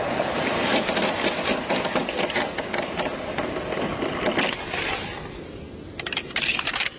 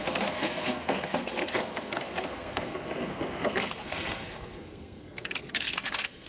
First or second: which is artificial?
second